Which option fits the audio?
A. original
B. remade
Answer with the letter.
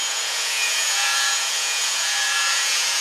B